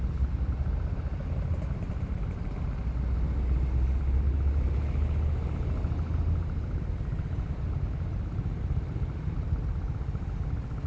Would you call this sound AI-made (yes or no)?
no